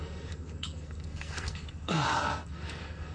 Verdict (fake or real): fake